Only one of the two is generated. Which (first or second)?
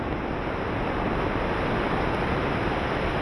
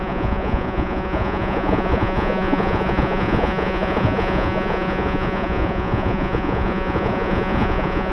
second